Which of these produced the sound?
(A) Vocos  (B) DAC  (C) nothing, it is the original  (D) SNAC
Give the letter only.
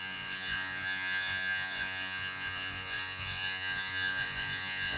A